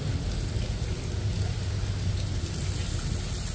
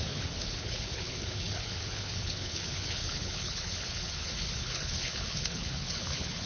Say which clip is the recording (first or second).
first